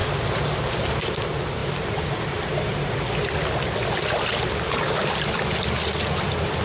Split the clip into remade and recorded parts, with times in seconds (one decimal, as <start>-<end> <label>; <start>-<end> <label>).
0.0-6.6 recorded